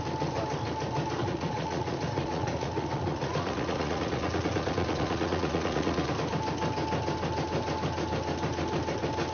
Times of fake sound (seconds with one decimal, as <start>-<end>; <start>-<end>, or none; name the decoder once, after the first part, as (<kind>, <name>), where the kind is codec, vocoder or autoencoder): 1.2-6.1 (vocoder, Vocos)